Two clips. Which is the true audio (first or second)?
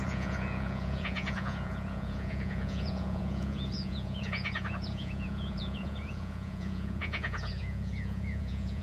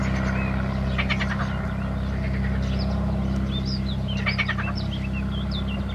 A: second